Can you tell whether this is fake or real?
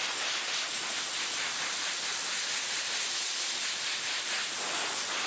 real